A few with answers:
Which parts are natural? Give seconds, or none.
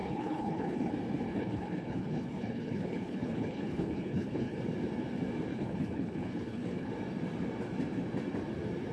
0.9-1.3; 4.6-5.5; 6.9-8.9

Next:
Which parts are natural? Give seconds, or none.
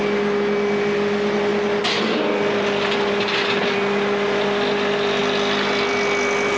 0.0-6.6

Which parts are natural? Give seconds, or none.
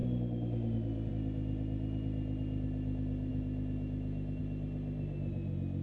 0.0-5.8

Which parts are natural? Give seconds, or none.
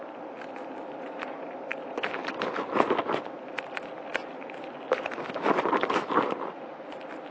0.0-7.3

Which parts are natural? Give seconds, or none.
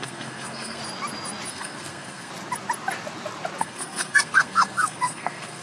0.8-1.5; 2.3-3.6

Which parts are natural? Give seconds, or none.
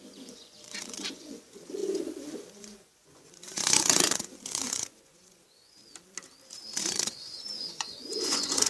1.8-2.5; 5.8-6.8